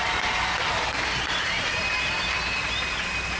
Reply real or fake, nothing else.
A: fake